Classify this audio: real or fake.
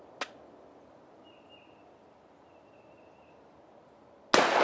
real